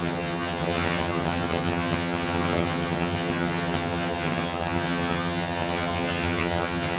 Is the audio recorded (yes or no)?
no